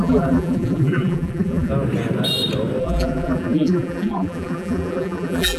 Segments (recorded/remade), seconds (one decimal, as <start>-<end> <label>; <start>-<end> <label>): 0.0-1.7 remade; 1.7-2.8 recorded; 2.8-5.6 remade